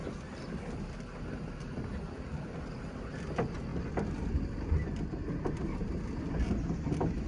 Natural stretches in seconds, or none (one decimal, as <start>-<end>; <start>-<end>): 0.0-7.3